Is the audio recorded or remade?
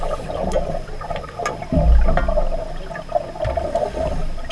recorded